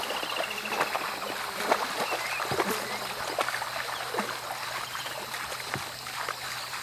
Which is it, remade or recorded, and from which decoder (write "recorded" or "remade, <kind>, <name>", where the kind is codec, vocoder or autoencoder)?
recorded